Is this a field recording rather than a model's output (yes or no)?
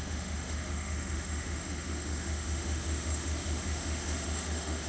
no